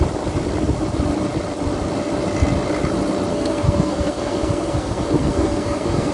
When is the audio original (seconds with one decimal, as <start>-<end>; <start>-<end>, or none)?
0.0-3.3